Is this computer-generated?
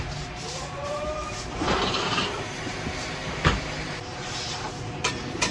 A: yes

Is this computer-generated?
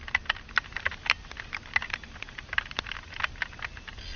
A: no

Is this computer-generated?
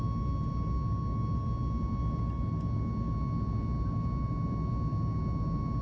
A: no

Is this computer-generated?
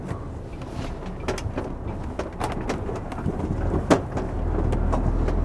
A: no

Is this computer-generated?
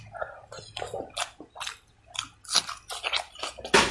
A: no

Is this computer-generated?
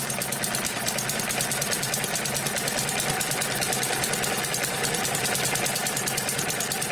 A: no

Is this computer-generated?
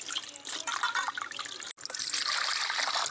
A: no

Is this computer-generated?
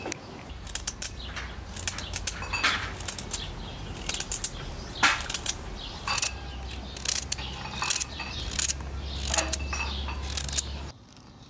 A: no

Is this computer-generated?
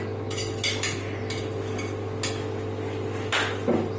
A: no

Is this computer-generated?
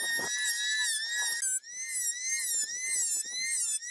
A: no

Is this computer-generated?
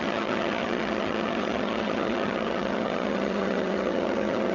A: yes